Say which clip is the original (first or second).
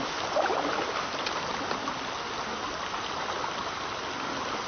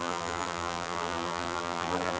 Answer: first